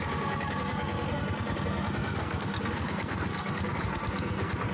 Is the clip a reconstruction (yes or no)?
yes